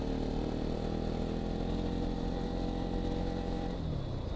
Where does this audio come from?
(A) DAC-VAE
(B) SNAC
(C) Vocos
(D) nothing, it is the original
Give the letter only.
D